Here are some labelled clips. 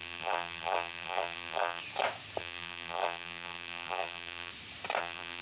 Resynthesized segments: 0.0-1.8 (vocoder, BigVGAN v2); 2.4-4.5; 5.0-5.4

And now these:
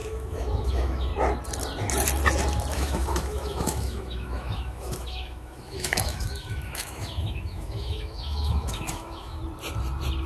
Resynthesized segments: 0.0-1.1 (autoencoder, DAC-VAE); 2.7-9.4

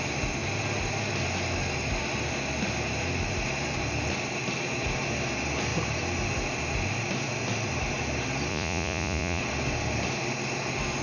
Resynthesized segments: 8.5-9.4 (vocoder, Vocos)